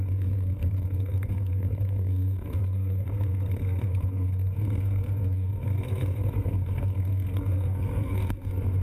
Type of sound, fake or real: fake